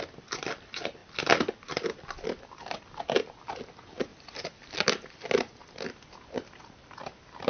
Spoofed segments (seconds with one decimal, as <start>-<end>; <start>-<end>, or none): 4.1-7.0